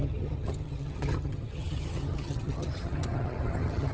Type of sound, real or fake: fake